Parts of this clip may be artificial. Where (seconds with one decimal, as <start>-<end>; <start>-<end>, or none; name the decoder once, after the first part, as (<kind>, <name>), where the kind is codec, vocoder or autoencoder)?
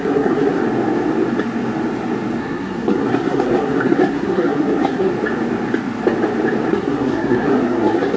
0.0-0.6 (codec, SNAC); 2.4-5.1; 6.7-8.2